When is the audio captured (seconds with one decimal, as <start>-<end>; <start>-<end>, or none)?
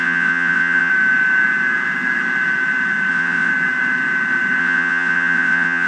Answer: 0.9-3.1; 3.5-4.6